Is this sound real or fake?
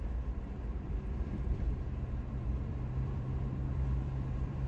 fake